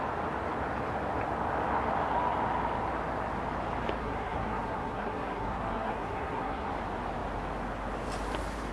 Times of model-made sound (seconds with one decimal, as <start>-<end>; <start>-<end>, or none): 4.0-6.7